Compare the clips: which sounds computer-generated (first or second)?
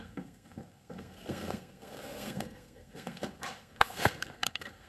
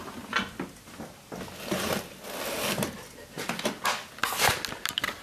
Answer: first